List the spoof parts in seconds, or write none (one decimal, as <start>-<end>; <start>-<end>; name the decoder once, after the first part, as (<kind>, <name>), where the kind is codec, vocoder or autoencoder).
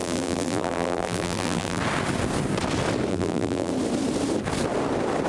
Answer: 0.0-1.8 (vocoder, BigVGAN v2); 3.1-3.7